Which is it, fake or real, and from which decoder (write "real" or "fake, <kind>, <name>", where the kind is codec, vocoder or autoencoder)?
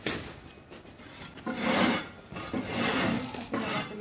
real